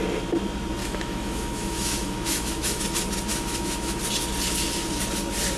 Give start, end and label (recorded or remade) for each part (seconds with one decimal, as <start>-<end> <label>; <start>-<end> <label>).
0.0-0.8 recorded; 0.8-2.8 remade; 2.8-3.3 recorded; 3.3-4.0 remade; 4.0-5.6 recorded